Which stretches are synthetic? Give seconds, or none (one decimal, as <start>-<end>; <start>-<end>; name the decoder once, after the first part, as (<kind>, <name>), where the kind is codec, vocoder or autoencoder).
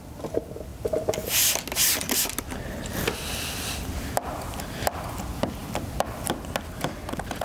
none